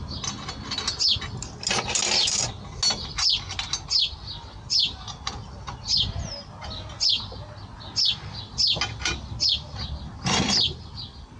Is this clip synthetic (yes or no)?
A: no